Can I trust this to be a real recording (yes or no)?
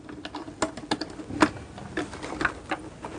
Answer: yes